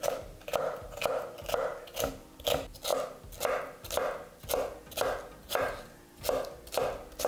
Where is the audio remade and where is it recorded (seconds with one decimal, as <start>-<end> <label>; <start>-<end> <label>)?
0.0-7.3 recorded